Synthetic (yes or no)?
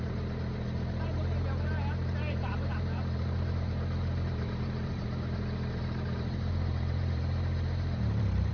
yes